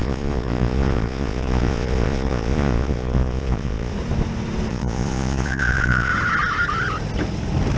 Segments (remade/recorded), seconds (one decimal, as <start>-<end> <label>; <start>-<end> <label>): 0.0-3.9 remade; 3.9-4.7 recorded; 4.7-6.1 remade; 6.1-7.8 recorded